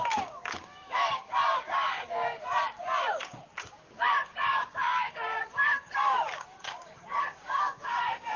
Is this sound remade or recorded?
remade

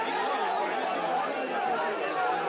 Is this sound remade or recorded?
recorded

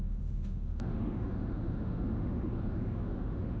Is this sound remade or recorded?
remade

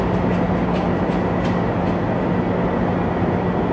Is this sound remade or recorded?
recorded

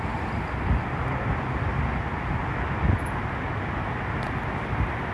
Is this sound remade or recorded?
recorded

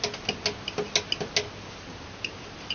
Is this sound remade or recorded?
recorded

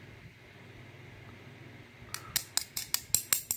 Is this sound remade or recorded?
recorded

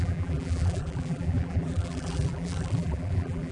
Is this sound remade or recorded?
remade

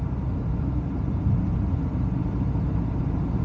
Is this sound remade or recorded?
remade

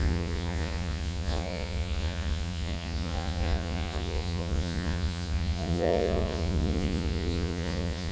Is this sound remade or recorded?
remade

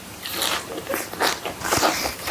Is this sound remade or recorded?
remade